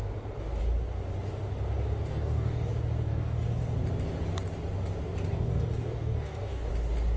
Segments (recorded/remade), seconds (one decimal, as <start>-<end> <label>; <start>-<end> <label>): 0.0-2.1 recorded; 2.1-2.7 remade; 2.7-3.1 recorded; 3.1-3.6 remade; 3.6-5.3 recorded; 5.3-6.7 remade; 6.7-7.2 recorded